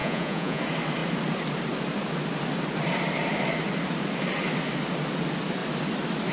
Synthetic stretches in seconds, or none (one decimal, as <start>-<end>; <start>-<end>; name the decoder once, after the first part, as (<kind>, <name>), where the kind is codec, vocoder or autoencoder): 0.0-0.6 (vocoder, Vocos)